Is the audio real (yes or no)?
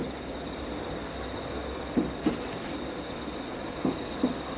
yes